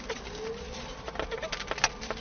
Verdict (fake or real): real